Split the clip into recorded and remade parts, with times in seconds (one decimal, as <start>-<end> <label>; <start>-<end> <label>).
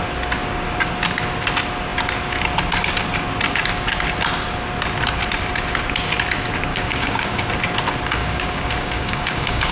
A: 0.0-6.7 recorded; 6.7-7.5 remade; 7.5-8.2 recorded; 8.2-9.7 remade